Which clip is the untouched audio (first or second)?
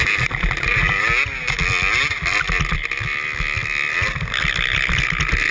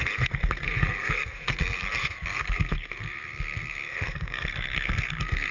first